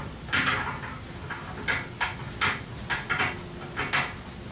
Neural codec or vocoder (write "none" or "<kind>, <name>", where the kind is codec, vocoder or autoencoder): none